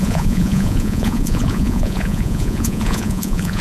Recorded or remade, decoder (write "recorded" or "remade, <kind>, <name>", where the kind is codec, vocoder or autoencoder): remade, vocoder, Vocos